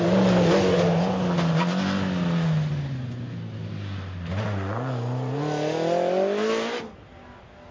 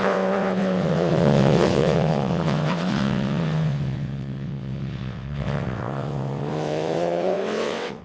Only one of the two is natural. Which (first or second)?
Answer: first